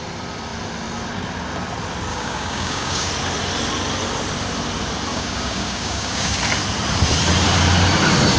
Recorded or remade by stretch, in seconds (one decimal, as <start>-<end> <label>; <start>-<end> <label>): 0.0-2.1 recorded; 2.1-3.1 remade; 3.1-5.1 recorded; 5.1-6.4 remade; 6.4-8.4 recorded